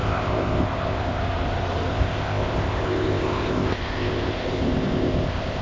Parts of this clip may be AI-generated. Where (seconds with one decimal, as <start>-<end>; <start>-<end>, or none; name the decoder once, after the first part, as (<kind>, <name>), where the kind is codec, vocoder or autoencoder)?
0.0-1.2 (codec, ZipCodec); 1.9-5.6